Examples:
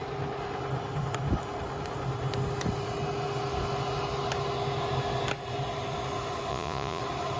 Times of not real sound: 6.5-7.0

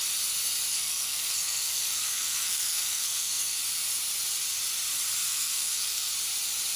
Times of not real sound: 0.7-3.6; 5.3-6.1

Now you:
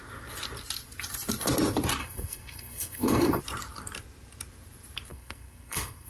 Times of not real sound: 2.0-3.4; 5.1-6.1

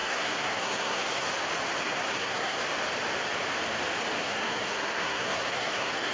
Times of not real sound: 0.0-1.3; 1.8-2.6; 4.2-6.1